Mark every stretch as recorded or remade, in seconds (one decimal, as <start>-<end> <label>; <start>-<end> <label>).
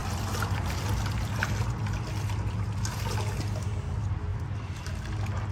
0.0-4.3 recorded; 4.3-4.9 remade; 4.9-5.5 recorded